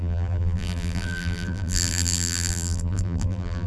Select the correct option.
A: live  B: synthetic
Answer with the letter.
B